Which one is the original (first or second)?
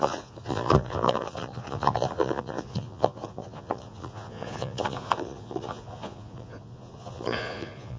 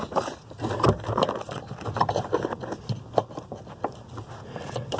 second